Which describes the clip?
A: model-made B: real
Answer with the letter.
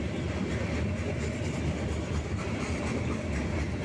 B